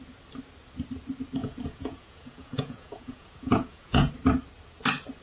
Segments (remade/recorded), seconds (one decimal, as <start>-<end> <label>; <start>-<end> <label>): 0.0-1.4 recorded; 1.4-4.1 remade; 4.1-5.2 recorded